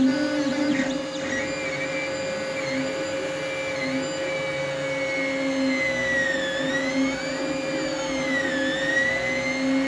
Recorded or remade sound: recorded